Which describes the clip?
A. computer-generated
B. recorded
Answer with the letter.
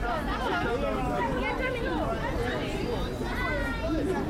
B